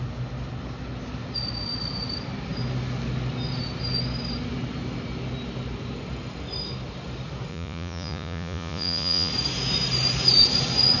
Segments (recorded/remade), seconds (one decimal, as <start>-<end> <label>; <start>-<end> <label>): 0.0-7.5 recorded; 7.5-9.3 remade; 9.3-11.0 recorded